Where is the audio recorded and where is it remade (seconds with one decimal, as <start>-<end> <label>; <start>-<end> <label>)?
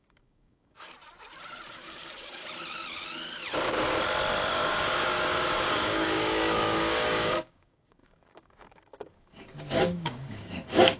0.0-0.9 remade; 0.9-1.7 recorded; 1.7-2.4 remade; 2.4-4.5 recorded; 4.5-11.0 remade